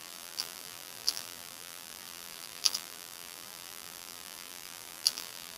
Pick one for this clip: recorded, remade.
remade